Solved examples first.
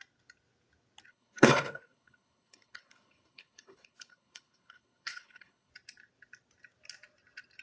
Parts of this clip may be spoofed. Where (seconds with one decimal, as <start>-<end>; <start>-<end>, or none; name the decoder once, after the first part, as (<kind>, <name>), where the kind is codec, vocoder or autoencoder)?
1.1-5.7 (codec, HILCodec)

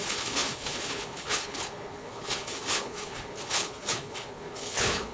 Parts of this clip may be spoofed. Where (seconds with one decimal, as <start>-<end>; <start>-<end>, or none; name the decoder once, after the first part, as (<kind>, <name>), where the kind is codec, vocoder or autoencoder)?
0.0-5.1 (codec, HILCodec)

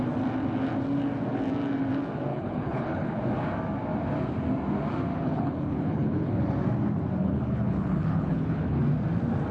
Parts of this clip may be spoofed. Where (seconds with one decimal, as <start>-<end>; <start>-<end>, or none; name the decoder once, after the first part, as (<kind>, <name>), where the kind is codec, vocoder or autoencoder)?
2.3-3.2 (codec, HILCodec); 5.1-6.4; 7.2-8.8

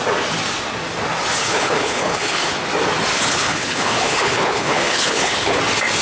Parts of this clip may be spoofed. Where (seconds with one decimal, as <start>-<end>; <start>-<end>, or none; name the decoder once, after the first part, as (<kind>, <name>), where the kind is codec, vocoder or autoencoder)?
1.4-2.5 (codec, HILCodec); 3.1-5.6

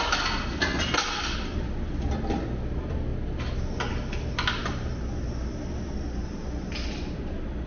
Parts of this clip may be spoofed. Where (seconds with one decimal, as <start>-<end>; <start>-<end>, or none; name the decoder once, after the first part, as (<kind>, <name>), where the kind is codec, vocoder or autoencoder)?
none

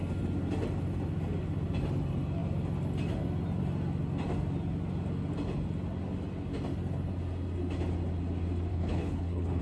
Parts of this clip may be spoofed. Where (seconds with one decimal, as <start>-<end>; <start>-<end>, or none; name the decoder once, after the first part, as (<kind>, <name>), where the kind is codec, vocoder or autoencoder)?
8.7-9.6 (codec, HILCodec)

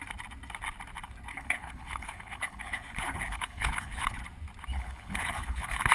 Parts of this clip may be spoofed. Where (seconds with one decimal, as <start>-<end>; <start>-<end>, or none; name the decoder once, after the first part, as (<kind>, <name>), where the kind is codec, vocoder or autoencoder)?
1.3-4.2 (codec, HILCodec); 4.7-5.9

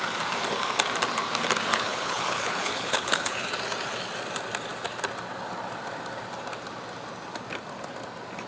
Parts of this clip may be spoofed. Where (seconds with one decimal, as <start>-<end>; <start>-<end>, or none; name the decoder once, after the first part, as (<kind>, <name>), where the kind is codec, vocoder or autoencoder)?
1.7-3.5 (codec, HILCodec)